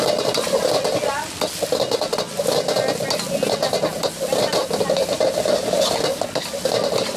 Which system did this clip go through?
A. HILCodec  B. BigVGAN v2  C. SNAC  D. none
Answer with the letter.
D